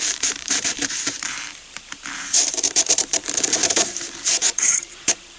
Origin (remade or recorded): remade